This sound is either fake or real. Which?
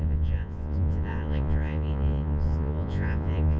fake